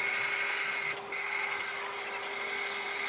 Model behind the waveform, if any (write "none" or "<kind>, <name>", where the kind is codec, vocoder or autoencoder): none